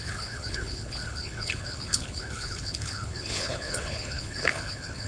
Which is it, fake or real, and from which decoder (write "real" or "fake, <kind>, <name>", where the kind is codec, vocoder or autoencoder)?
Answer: fake, codec, HILCodec